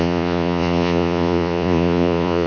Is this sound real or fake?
fake